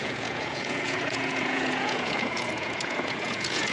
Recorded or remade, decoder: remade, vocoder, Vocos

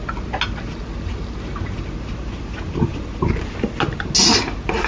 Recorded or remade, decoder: recorded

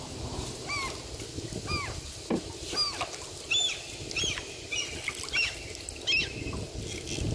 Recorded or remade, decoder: recorded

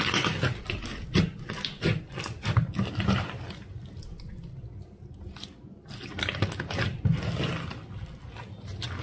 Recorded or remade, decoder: recorded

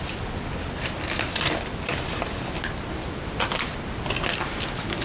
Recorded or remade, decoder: recorded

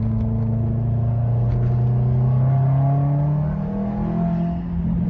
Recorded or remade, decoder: recorded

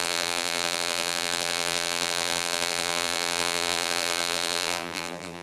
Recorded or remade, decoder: remade, vocoder, BigVGAN v2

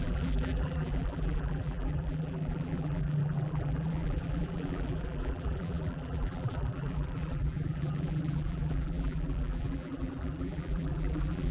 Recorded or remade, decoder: remade, vocoder, BigVGAN v2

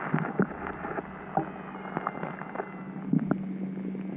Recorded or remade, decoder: recorded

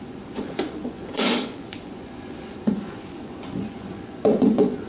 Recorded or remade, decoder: remade, vocoder, Vocos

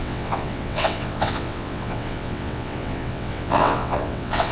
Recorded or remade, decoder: remade, vocoder, WaveNeXt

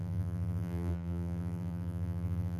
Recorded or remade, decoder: remade, vocoder, BigVGAN v2